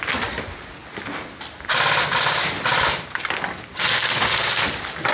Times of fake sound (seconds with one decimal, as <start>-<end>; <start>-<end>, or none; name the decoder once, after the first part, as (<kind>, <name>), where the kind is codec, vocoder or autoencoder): none